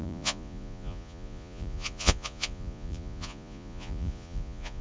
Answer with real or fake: fake